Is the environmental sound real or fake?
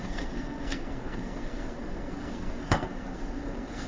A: fake